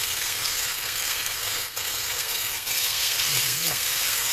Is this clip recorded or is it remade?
remade